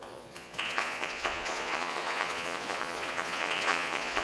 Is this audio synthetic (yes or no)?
yes